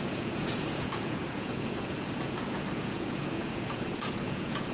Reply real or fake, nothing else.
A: fake